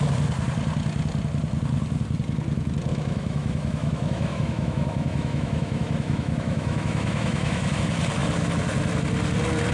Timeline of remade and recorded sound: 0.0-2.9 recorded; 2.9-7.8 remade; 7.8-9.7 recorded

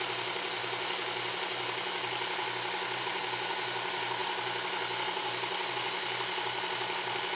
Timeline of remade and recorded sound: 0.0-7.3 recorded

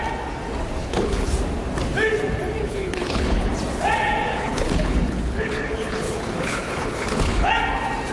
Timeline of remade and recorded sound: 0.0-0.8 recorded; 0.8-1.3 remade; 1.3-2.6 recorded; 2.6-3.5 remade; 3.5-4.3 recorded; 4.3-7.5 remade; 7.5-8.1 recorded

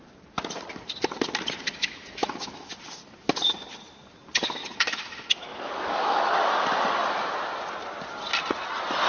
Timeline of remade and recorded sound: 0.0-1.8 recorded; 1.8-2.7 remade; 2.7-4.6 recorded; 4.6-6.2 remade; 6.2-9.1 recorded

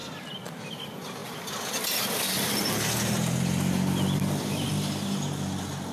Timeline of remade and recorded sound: 0.0-0.6 remade; 0.6-1.2 recorded; 1.2-4.7 remade; 4.7-5.9 recorded